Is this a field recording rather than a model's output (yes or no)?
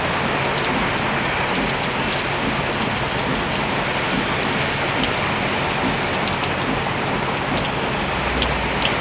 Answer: yes